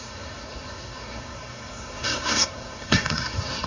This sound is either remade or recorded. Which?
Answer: remade